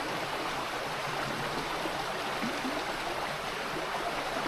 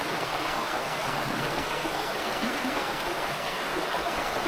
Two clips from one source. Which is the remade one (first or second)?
second